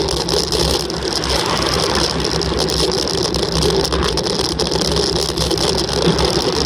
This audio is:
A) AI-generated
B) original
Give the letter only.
B